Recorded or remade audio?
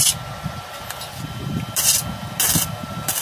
recorded